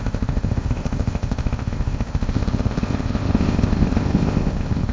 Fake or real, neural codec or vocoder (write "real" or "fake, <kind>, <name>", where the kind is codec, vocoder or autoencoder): fake, codec, ZipCodec